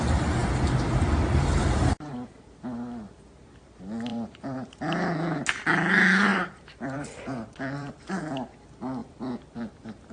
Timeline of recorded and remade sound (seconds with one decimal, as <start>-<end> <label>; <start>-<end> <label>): 0.0-4.1 recorded; 4.1-4.8 remade; 4.8-6.3 recorded; 6.3-8.1 remade; 8.1-9.0 recorded; 9.0-9.7 remade; 9.7-10.1 recorded